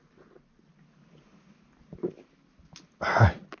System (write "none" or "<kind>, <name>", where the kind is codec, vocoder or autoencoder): none